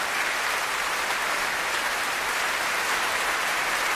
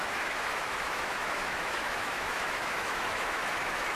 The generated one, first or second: second